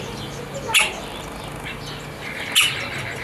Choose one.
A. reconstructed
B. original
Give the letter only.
B